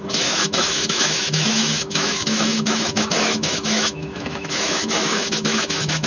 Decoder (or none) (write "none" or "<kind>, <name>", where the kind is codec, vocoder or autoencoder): autoencoder, DAC-VAE